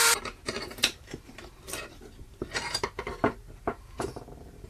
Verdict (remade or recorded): remade